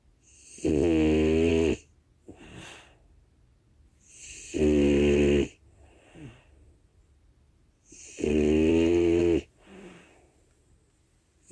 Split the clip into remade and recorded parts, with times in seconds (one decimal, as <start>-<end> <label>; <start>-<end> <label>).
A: 0.0-6.9 recorded; 6.9-9.2 remade; 9.2-11.5 recorded